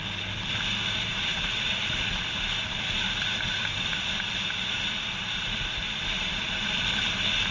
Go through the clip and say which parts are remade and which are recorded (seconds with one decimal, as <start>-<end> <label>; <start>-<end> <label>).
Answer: 0.0-7.5 recorded